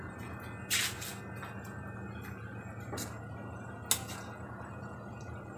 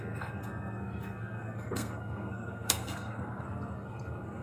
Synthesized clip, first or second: second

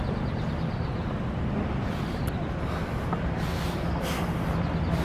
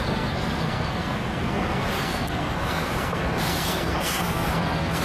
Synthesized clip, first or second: second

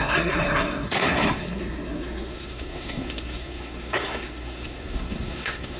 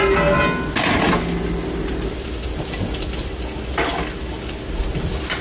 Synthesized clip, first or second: first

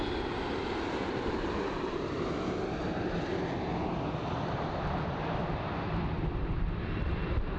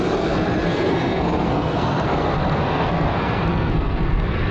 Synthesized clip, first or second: second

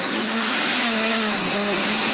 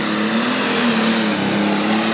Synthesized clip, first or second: first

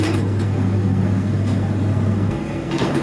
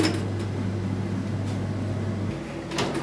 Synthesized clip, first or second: first